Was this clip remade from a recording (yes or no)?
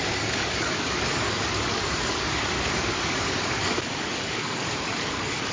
yes